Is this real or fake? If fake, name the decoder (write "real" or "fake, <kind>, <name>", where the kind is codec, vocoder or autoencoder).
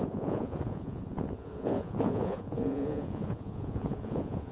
fake, vocoder, Vocos